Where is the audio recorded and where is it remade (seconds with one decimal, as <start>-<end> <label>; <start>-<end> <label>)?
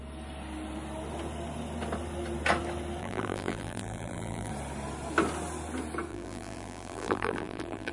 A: 0.0-3.0 recorded; 3.0-4.5 remade; 4.5-6.1 recorded; 6.1-7.9 remade